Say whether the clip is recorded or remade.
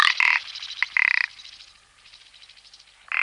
recorded